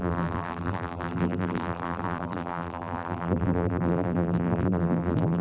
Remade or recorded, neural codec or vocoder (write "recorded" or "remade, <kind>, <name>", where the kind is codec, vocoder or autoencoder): remade, vocoder, BigVGAN v2